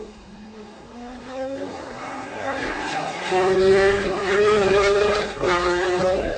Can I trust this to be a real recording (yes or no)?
no